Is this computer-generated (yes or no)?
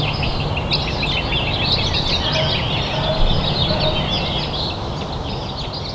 no